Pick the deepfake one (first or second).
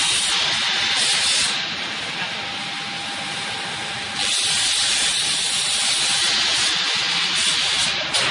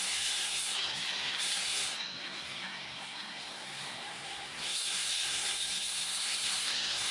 second